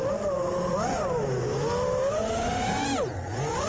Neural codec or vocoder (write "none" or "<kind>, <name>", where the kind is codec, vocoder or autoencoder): none